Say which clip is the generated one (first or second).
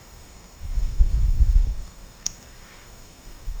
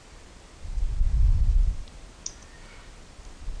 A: first